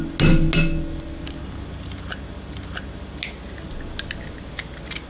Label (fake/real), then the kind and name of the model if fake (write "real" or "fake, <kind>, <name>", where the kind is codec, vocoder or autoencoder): real